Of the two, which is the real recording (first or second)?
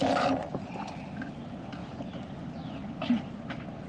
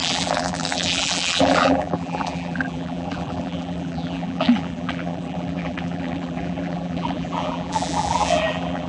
first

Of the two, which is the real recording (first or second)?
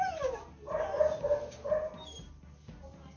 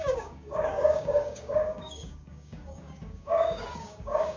first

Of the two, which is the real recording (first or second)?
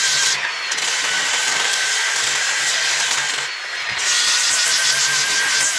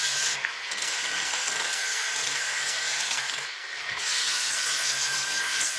first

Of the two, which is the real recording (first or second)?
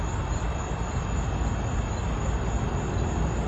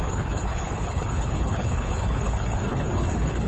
first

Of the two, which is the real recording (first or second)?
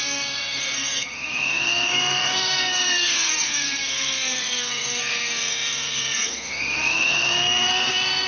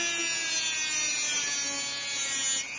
second